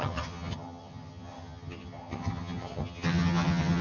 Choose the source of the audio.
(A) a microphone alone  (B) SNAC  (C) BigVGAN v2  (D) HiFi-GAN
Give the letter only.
D